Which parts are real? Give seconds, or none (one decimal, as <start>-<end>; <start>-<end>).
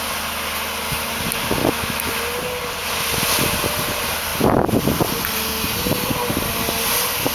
0.0-1.6; 2.1-7.3